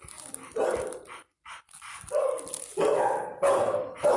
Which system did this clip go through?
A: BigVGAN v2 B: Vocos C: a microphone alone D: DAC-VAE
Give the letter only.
C